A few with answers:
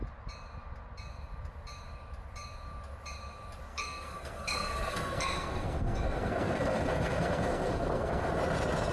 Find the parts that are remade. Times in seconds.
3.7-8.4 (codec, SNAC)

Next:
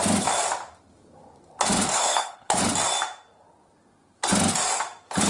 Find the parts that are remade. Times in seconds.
1.9-2.6 (codec, HILCodec)

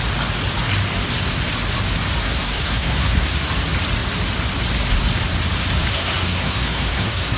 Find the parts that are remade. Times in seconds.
2.2-3.5 (codec, SNAC); 5.9-7.4